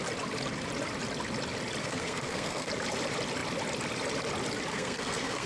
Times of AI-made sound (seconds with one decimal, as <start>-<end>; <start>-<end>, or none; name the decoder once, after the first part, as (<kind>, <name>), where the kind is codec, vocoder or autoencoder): 1.8-2.7 (codec, SNAC); 4.7-5.5